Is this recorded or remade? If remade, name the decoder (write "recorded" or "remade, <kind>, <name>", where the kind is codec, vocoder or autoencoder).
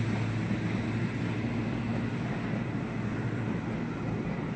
recorded